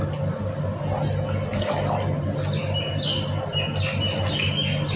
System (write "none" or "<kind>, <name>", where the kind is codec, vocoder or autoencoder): none